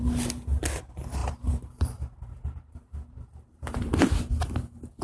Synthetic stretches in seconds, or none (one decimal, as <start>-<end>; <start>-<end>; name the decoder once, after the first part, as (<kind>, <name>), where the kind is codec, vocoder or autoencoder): 1.2-4.2 (vocoder, BigVGAN v2)